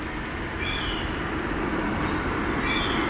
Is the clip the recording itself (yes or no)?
yes